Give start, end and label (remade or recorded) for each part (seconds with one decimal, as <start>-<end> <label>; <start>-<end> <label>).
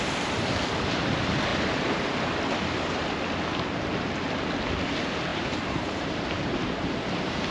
0.0-1.5 recorded; 1.5-2.0 remade; 2.0-5.3 recorded; 5.3-6.1 remade; 6.1-7.5 recorded